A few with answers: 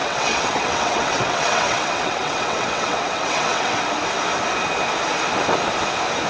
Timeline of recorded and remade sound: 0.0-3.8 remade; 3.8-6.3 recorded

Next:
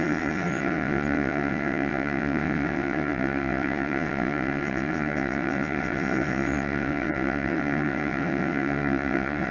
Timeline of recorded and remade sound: 0.0-9.5 remade

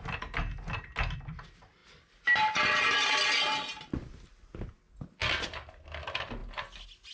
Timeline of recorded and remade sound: 0.0-7.1 recorded

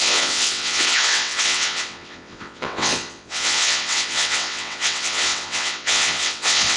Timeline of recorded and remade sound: 0.0-6.8 remade

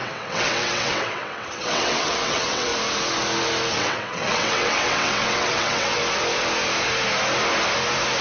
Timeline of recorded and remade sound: 0.0-2.7 remade; 2.7-3.7 recorded; 3.7-6.0 remade; 6.0-8.2 recorded

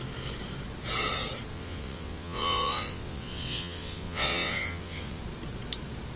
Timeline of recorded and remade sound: 0.0-1.5 recorded; 1.5-5.2 remade; 5.2-6.2 recorded